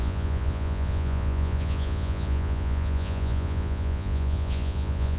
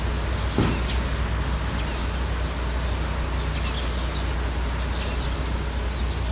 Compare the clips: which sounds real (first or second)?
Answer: second